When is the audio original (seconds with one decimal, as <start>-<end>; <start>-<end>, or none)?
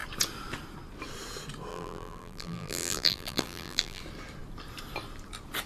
0.0-1.7; 4.0-5.7